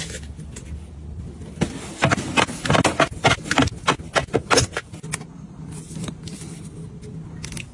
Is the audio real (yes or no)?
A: yes